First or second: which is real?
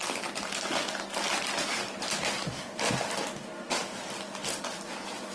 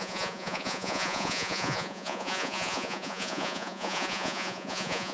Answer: first